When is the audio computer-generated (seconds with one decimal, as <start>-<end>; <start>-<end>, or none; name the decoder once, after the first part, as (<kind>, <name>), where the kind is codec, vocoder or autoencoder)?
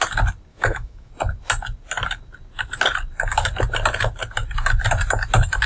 0.5-1.1 (autoencoder, DAC-VAE)